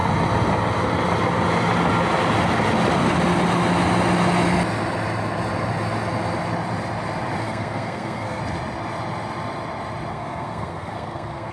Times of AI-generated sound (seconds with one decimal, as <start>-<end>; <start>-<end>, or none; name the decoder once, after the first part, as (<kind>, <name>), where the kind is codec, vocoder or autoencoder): 7.4-8.4 (codec, SNAC); 10.1-11.5